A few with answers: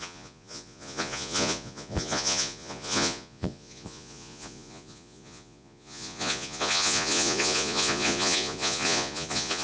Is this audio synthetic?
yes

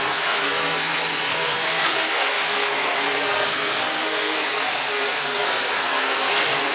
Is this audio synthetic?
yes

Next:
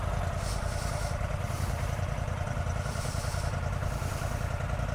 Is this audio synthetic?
no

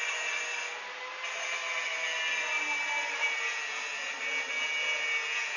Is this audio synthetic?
no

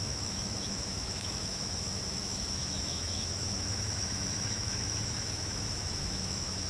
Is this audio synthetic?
yes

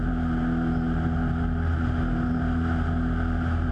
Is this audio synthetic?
no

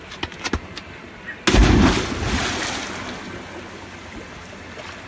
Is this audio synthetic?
no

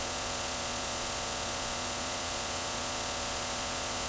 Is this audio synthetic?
yes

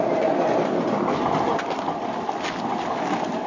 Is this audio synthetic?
no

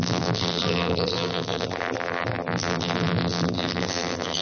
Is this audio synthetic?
yes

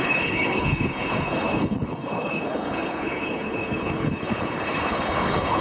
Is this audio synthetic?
yes